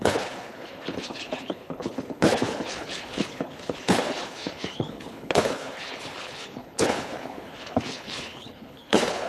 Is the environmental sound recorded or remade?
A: remade